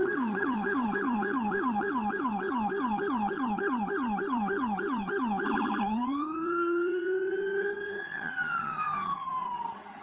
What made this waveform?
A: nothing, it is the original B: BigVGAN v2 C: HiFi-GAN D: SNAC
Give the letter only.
C